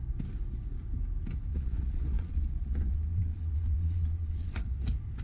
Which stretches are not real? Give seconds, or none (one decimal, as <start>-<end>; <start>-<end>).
1.5-4.6